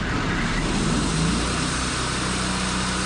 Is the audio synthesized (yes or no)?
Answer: yes